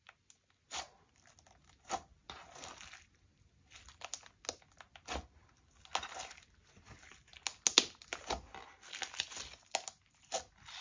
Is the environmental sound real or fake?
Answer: real